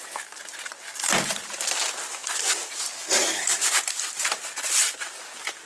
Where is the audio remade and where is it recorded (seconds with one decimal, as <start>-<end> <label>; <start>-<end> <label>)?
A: 0.0-2.2 recorded; 2.2-2.8 remade; 2.8-3.3 recorded; 3.3-5.2 remade; 5.2-5.7 recorded